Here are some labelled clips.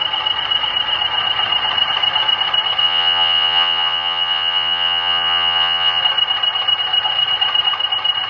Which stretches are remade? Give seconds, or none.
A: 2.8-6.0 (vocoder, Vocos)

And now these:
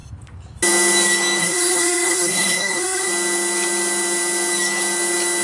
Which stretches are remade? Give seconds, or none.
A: 1.4-3.1 (codec, SNAC)

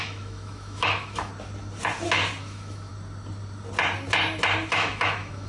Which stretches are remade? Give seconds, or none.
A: 0.0-1.3 (autoencoder, DAC-VAE); 2.4-2.9; 4.7-5.5

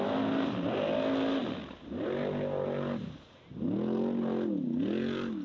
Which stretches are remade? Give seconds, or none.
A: none

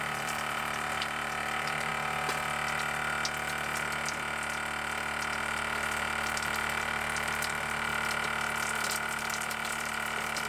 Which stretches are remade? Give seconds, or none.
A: 0.0-1.9 (vocoder, BigVGAN v2); 5.4-7.9; 9.2-10.5